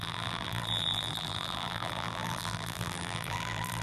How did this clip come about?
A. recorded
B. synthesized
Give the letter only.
B